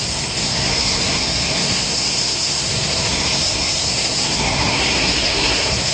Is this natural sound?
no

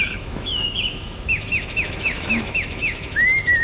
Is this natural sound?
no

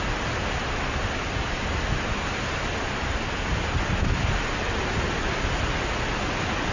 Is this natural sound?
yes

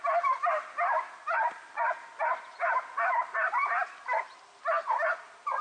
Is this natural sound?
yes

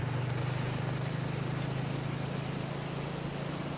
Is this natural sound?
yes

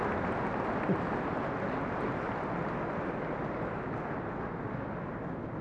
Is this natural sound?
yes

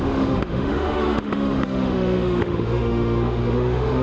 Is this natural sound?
no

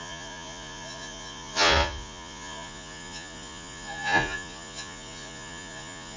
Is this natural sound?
no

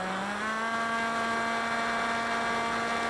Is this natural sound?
yes